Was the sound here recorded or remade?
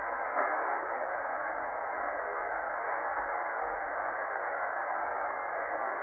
remade